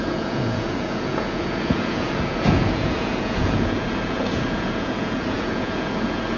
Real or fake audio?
fake